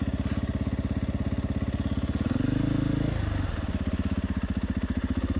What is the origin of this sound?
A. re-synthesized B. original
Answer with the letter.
B